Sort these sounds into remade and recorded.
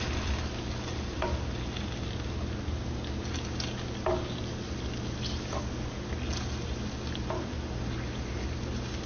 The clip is recorded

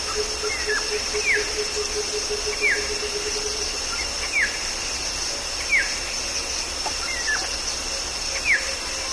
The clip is recorded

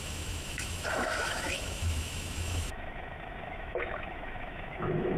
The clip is remade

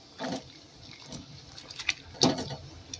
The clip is recorded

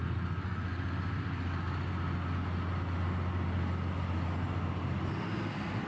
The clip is recorded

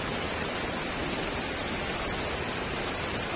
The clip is recorded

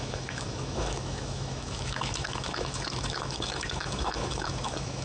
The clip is remade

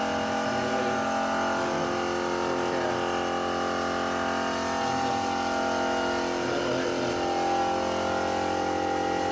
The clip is recorded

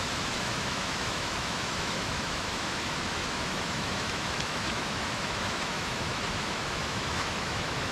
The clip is remade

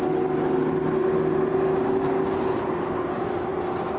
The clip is recorded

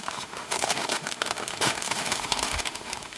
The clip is remade